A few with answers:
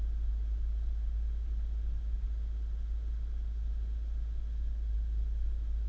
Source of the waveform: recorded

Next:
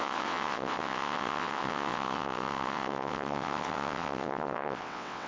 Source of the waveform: remade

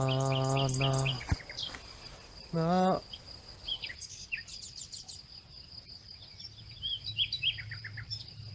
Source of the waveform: recorded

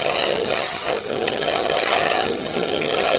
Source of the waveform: remade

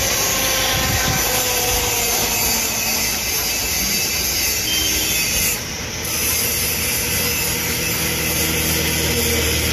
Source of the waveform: recorded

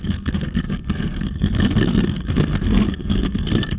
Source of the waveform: remade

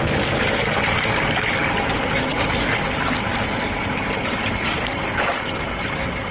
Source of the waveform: remade